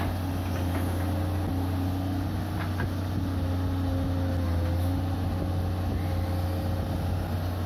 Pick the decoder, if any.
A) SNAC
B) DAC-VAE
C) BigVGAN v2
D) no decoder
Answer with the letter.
D